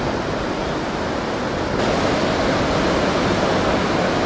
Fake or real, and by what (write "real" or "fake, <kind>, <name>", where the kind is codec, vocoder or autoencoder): real